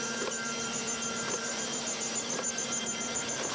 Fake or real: fake